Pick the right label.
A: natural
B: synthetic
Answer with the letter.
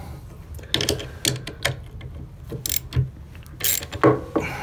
A